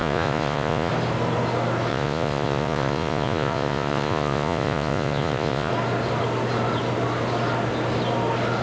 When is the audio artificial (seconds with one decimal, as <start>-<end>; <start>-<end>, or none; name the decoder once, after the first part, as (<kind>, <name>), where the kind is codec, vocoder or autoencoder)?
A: 0.0-0.9 (vocoder, Vocos); 1.9-5.7